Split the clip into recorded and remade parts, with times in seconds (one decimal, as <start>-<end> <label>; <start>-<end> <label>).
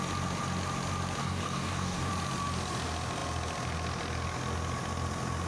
0.0-1.2 recorded; 1.2-2.1 remade; 2.1-5.5 recorded